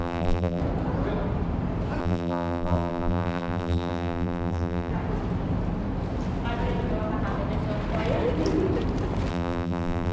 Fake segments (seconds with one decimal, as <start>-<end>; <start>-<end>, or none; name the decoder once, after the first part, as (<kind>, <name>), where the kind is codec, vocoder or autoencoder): 0.0-0.6 (vocoder, BigVGAN v2); 2.0-4.9; 9.3-10.1